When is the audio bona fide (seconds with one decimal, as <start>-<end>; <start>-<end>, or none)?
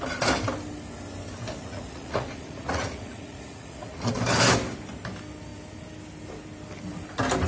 0.0-1.6; 4.1-7.5